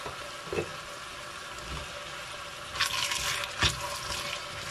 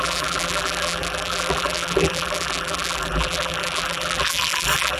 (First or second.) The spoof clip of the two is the second